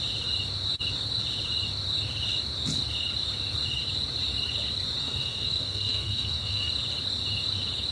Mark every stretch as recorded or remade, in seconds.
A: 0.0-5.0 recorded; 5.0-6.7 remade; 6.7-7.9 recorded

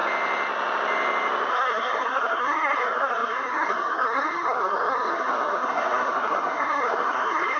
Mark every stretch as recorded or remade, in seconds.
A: 0.0-1.5 recorded; 1.5-7.6 remade

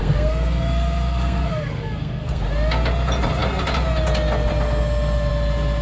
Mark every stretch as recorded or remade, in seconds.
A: 0.0-2.4 remade; 2.4-5.8 recorded